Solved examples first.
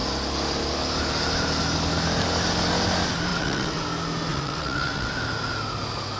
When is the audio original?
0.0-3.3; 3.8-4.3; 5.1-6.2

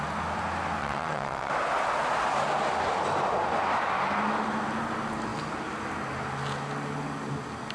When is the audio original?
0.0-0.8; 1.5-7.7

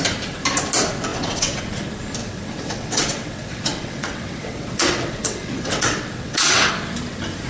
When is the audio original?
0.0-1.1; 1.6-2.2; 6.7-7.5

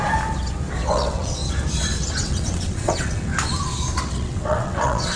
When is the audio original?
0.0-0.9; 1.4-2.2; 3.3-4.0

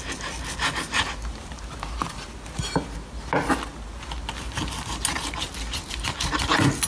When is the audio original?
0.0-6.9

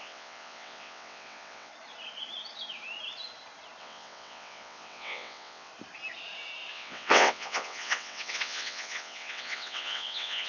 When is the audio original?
1.7-3.8; 5.7-6.7